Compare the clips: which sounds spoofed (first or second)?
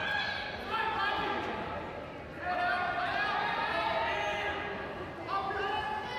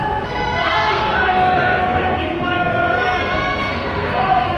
second